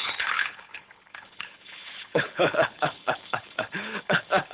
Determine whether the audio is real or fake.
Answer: fake